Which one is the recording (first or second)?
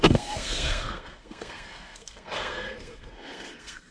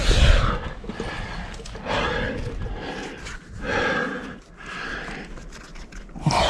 second